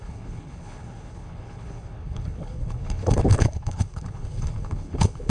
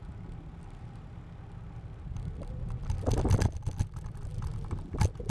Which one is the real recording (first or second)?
second